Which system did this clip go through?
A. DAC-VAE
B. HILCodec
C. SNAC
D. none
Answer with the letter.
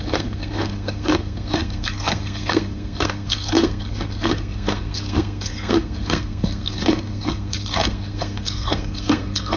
C